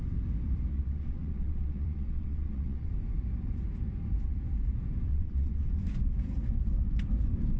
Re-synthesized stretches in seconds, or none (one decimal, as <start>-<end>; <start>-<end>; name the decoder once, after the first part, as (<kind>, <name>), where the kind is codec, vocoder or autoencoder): 0.7-2.9 (vocoder, WaveNeXt); 5.1-5.7